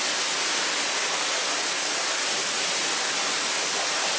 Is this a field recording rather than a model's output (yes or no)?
yes